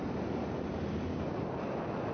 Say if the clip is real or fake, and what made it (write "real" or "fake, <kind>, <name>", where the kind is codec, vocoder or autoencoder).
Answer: real